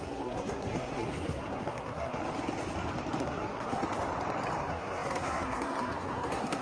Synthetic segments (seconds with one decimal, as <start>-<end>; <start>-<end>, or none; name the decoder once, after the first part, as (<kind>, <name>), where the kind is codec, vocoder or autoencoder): 0.0-2.2 (codec, SNAC); 3.2-3.8; 4.6-6.6